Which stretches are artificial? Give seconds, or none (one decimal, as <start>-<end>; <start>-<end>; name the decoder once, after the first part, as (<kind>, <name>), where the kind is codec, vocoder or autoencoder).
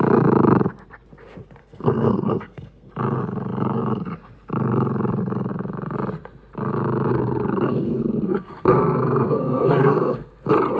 1.6-2.9 (codec, SNAC); 7.1-10.3